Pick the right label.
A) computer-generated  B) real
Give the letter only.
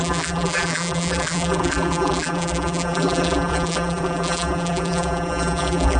A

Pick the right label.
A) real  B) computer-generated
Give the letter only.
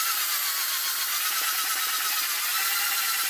A